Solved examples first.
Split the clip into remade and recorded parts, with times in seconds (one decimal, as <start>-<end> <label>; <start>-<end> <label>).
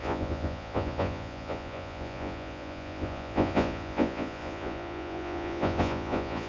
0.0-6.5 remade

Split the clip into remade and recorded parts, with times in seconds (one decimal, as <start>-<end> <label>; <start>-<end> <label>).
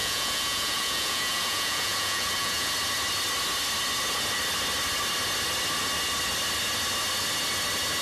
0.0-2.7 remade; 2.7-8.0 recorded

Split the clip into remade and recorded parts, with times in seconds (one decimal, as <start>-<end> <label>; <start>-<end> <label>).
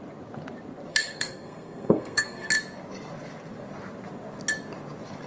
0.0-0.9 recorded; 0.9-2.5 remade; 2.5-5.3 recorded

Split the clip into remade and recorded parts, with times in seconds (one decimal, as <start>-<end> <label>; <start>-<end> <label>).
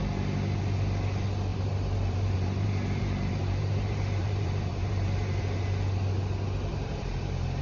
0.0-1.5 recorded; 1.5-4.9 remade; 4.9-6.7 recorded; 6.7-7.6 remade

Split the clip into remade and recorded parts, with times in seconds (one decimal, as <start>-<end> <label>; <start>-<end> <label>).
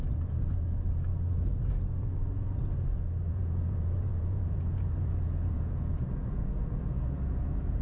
0.0-1.1 remade; 1.1-3.3 recorded; 3.3-7.8 remade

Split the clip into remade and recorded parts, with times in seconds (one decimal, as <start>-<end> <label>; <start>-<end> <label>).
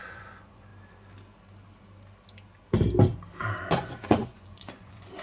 0.0-0.7 remade; 0.7-3.7 recorded; 3.7-5.2 remade